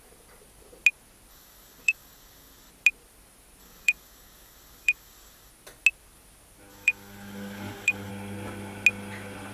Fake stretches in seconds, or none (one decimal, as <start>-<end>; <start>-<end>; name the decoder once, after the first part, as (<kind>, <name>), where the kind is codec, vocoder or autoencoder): 1.3-2.7 (codec, DAC); 3.6-5.5; 6.7-8.1